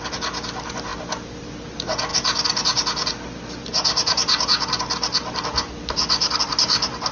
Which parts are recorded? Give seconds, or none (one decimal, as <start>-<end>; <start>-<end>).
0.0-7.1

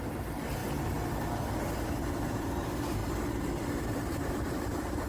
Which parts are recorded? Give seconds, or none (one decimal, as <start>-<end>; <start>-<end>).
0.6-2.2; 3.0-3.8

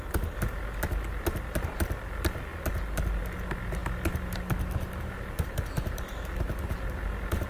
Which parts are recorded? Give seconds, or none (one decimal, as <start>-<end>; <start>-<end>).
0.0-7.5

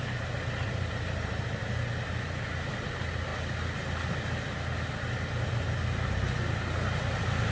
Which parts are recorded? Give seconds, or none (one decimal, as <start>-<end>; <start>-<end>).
1.6-2.1; 3.3-7.5